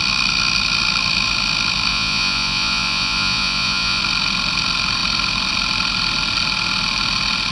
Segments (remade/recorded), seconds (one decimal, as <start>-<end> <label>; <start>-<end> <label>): 0.0-1.9 recorded; 1.9-4.0 remade; 4.0-7.5 recorded